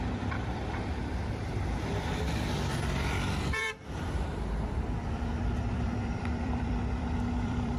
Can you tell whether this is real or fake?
fake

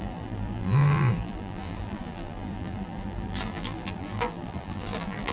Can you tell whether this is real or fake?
fake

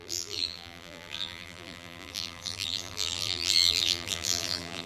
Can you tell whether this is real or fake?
fake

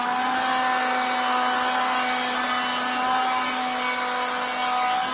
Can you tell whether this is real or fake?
real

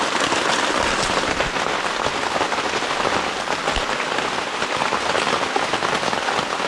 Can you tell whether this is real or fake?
real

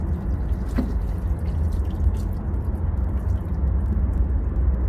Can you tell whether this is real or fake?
real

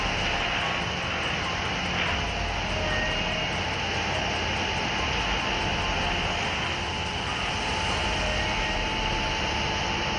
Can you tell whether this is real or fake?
real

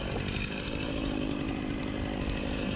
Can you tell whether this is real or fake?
fake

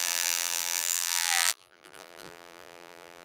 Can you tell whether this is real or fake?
fake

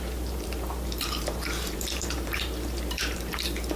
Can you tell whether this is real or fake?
fake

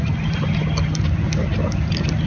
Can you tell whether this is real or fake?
real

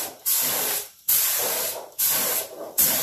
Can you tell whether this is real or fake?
fake